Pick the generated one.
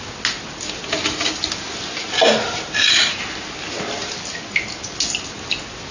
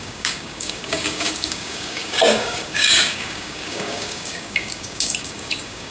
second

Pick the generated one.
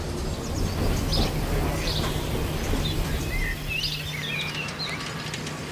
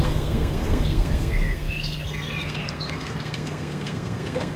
second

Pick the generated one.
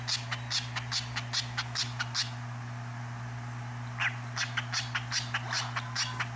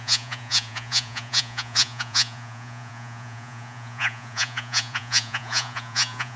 second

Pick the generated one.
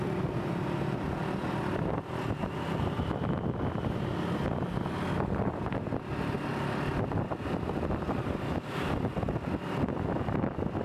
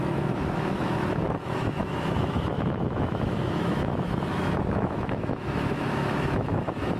second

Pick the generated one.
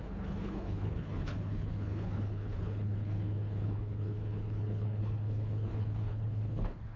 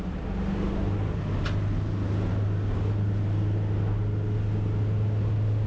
first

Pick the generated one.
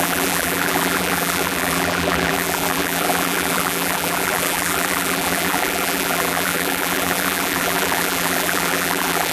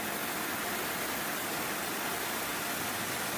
first